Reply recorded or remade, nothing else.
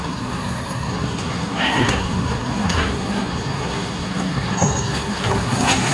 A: remade